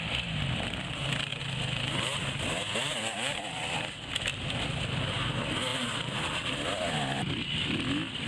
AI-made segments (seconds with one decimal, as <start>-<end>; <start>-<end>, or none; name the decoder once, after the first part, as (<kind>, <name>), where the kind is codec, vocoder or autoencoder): 4.3-5.0 (vocoder, BigVGAN v2); 5.7-6.5

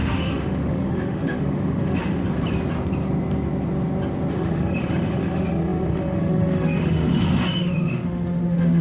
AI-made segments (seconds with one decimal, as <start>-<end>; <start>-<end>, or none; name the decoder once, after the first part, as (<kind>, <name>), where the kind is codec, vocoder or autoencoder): 0.0-2.2 (autoencoder, DAC-VAE); 4.3-8.8

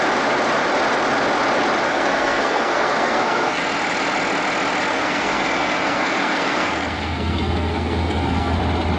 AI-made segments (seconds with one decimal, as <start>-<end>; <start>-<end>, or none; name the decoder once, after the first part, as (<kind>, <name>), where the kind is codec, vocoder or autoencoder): 1.9-3.6 (codec, SNAC); 4.9-8.6

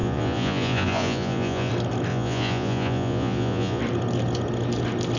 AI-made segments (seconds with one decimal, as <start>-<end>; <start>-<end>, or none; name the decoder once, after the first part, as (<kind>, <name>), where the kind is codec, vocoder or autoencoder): 0.0-1.7 (vocoder, Vocos); 2.1-3.8

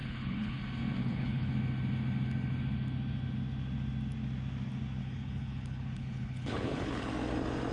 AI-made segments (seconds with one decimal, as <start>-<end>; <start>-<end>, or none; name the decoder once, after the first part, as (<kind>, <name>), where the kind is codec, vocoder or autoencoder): 0.0-0.6 (codec, HILCodec); 1.0-1.5; 5.0-7.1

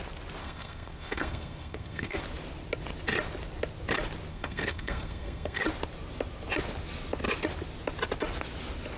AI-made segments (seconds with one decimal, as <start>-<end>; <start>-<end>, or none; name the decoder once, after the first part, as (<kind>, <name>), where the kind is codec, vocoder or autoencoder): 0.4-2.2 (codec, SNAC); 4.3-5.6

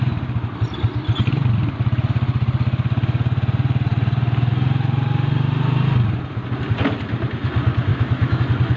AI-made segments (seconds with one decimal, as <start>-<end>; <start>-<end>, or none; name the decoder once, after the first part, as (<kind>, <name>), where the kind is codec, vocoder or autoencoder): 7.9-8.4 (autoencoder, DAC-VAE)

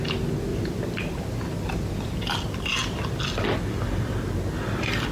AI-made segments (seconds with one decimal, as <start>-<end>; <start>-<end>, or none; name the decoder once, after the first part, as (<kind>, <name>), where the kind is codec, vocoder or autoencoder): 0.5-1.2 (vocoder, BigVGAN v2)